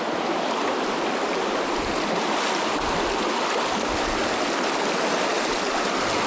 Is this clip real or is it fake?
real